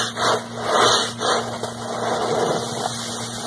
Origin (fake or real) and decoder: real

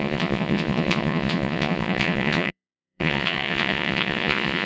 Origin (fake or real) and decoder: fake, vocoder, Vocos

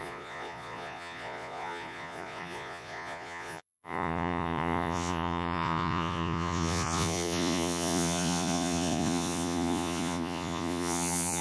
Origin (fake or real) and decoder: fake, vocoder, Vocos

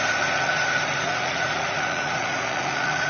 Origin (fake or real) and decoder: fake, vocoder, Vocos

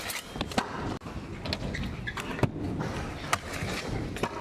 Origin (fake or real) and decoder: real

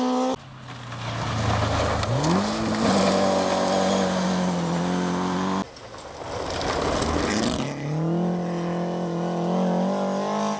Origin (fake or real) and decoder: real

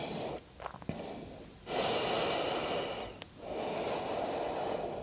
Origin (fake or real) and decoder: real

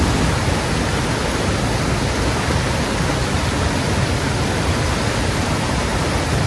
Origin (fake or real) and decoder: real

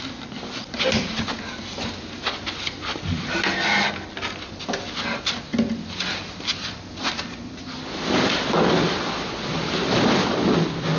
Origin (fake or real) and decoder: real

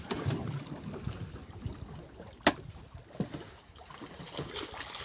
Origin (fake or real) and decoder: real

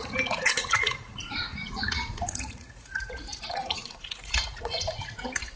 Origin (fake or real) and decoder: fake, vocoder, Vocos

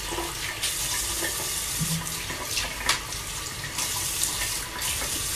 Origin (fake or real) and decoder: real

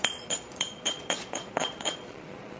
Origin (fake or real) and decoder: fake, vocoder, Vocos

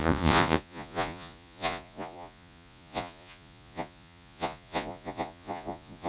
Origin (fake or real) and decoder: fake, vocoder, Vocos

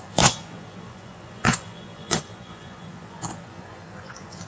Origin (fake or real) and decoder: fake, vocoder, Vocos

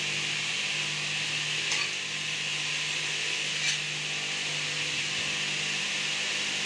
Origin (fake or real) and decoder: real